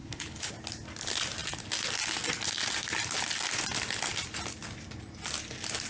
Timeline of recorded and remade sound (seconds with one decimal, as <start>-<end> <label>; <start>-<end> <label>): 0.0-0.5 remade; 0.5-5.9 recorded